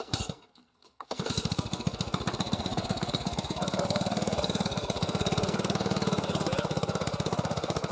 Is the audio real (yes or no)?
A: no